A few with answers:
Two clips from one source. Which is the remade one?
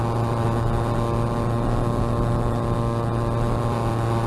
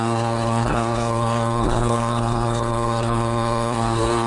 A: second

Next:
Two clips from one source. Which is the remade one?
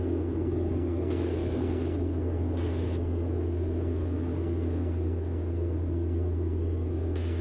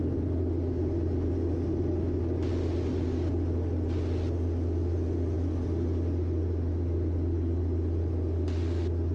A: first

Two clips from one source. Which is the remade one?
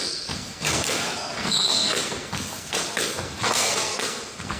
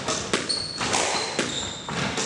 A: first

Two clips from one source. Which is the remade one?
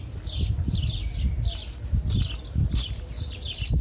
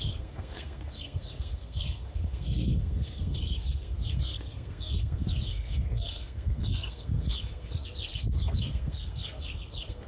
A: second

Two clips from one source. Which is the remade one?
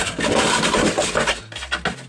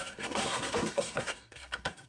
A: second